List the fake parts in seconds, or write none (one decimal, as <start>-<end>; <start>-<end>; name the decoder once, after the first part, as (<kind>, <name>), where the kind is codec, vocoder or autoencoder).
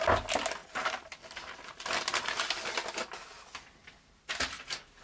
0.6-2.4 (vocoder, BigVGAN v2)